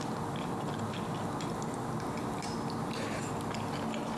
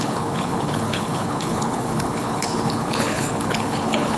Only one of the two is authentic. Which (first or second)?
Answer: first